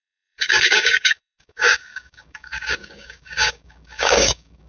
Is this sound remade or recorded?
remade